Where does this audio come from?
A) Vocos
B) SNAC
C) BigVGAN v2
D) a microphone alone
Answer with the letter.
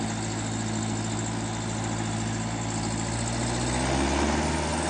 D